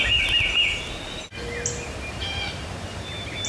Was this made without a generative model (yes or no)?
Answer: yes